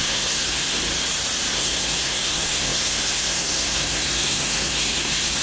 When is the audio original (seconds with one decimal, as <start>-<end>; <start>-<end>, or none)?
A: 0.8-1.5